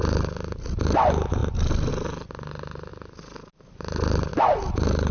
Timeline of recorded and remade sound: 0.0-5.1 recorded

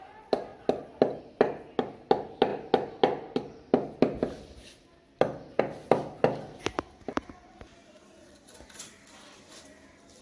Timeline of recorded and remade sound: 0.0-10.2 recorded